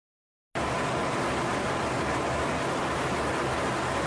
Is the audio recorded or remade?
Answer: recorded